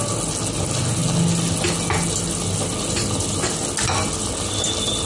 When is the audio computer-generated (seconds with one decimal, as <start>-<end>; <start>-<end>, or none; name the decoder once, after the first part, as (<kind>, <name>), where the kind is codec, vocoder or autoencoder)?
none